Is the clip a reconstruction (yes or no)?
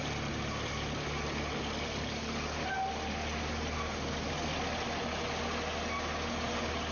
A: no